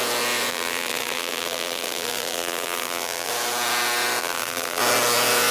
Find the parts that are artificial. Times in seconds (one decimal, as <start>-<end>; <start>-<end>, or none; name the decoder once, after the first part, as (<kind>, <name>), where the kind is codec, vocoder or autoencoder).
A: 0.5-3.3 (vocoder, BigVGAN v2); 4.2-4.8